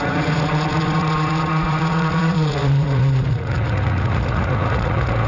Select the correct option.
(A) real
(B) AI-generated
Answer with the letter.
B